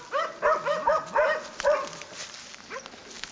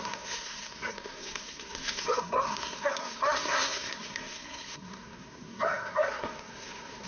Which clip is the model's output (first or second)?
second